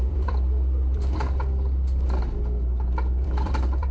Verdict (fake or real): fake